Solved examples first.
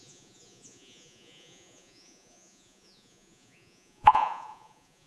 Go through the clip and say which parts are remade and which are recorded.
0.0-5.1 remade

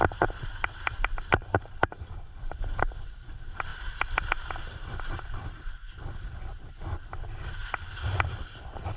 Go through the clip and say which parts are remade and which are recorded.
0.0-1.8 recorded; 1.8-3.2 remade; 3.2-3.7 recorded; 3.7-5.7 remade; 5.7-9.0 recorded